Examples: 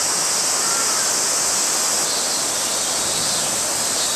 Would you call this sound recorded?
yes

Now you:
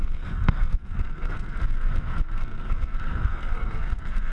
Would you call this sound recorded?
no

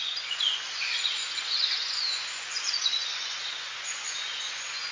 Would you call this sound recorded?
no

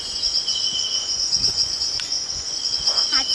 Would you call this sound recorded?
no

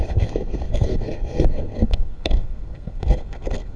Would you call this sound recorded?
no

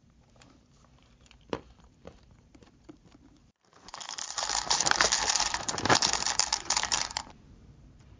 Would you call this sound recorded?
no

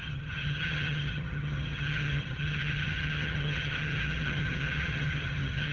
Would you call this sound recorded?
no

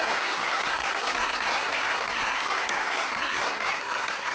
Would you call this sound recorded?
no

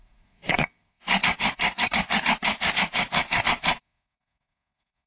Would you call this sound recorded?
no